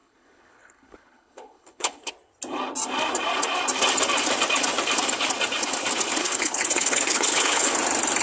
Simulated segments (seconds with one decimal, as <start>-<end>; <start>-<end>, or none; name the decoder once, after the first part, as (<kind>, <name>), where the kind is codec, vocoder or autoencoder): 0.0-2.1 (codec, HILCodec); 6.2-7.7